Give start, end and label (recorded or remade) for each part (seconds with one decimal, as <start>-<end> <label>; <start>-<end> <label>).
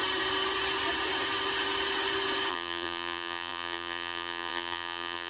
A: 0.0-2.5 recorded; 2.5-5.3 remade